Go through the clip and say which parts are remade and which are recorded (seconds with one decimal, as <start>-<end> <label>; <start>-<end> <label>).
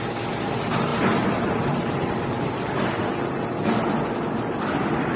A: 0.0-5.2 recorded